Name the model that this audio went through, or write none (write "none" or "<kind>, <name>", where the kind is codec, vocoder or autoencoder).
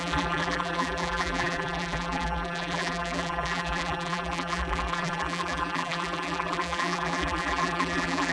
vocoder, BigVGAN v2